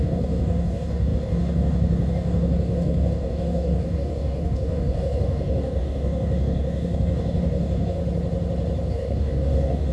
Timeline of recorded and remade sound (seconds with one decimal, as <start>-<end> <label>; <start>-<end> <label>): 0.0-8.0 remade; 8.0-8.9 recorded; 8.9-9.9 remade